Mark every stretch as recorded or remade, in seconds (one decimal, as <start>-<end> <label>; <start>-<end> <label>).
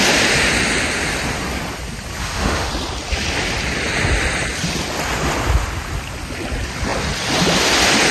0.0-2.2 recorded; 2.2-2.7 remade; 2.7-8.1 recorded